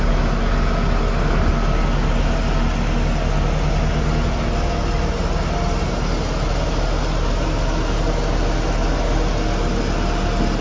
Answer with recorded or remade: recorded